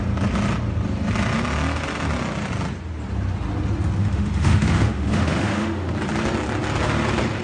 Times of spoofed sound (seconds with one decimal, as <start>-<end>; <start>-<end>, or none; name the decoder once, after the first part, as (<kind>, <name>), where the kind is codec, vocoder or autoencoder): 4.0-5.9 (autoencoder, DAC-VAE)